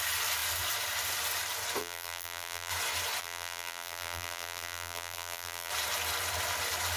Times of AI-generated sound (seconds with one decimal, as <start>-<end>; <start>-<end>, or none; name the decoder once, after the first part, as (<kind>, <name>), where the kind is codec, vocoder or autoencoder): 1.8-2.7 (vocoder, BigVGAN v2); 3.2-5.7